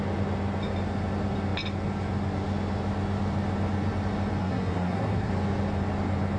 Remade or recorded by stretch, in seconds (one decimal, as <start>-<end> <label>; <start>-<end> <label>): 0.0-4.4 recorded; 4.4-5.3 remade; 5.3-6.4 recorded